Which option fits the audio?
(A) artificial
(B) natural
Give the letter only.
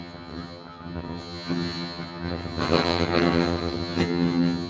A